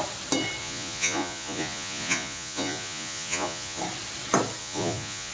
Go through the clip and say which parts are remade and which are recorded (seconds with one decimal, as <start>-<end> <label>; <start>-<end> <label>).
0.0-0.6 recorded; 0.6-3.8 remade; 3.8-4.6 recorded; 4.6-5.3 remade